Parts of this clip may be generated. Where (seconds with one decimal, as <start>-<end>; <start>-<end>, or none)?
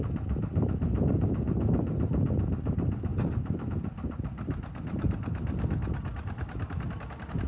none